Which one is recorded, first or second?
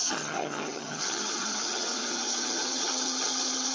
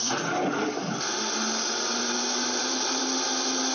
second